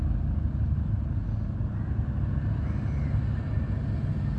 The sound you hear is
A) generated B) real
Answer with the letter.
B